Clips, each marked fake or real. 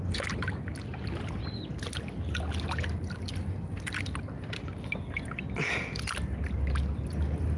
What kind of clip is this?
real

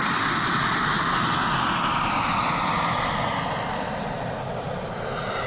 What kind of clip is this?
real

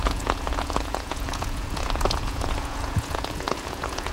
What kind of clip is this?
fake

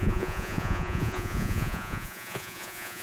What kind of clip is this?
fake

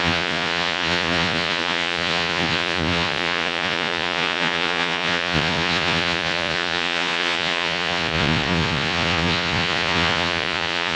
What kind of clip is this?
fake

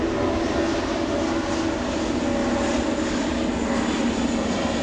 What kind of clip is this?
real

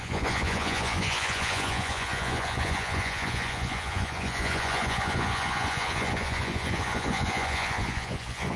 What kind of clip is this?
fake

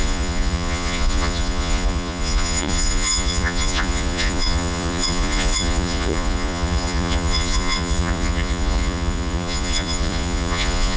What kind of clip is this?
fake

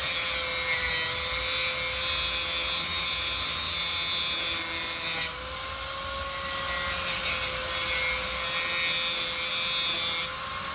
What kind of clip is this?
real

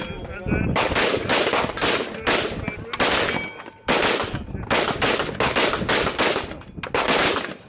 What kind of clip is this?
real